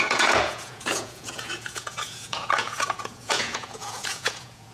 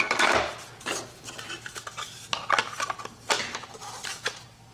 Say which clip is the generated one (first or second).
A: first